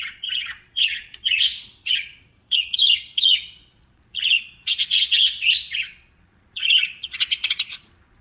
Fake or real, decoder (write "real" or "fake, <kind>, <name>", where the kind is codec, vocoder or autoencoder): fake, vocoder, Vocos